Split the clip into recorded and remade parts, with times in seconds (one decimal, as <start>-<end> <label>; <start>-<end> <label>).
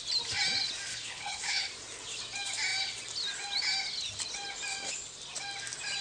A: 0.0-0.9 recorded; 0.9-1.7 remade; 1.7-6.0 recorded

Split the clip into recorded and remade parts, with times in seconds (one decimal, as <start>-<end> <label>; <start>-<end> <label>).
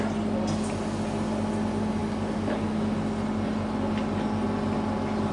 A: 0.0-5.3 recorded